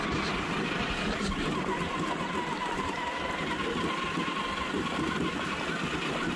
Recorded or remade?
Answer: recorded